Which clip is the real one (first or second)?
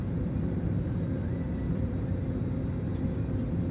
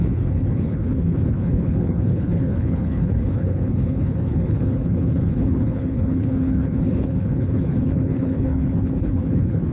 first